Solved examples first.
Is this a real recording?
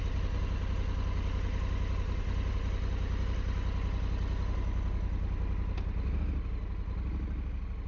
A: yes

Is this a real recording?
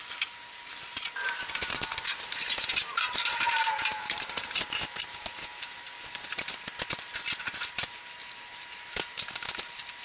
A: no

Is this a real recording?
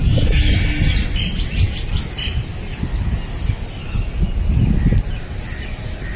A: yes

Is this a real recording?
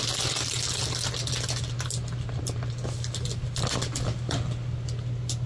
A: yes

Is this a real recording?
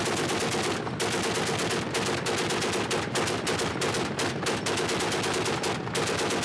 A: yes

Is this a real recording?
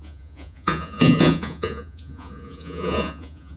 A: no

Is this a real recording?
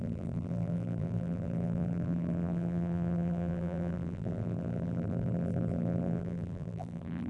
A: no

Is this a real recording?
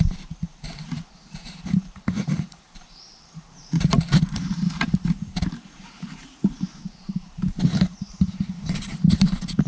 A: no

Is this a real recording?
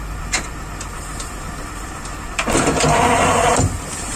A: no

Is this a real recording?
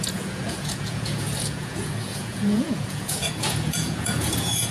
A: no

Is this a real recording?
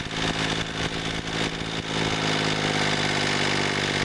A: yes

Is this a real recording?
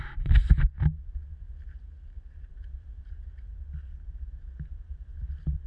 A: yes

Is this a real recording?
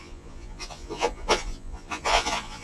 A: no